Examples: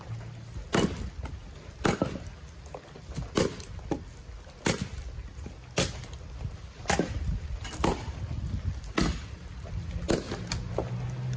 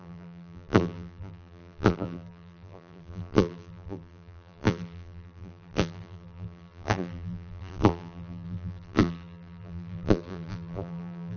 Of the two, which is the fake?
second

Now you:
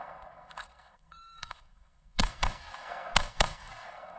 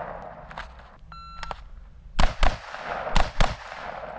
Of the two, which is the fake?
first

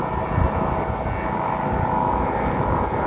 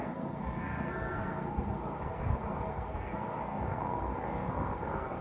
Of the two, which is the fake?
second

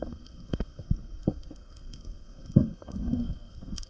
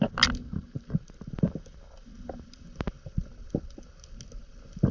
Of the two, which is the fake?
first